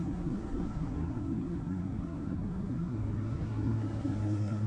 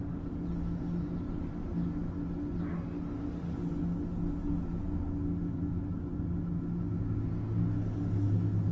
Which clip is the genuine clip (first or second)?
second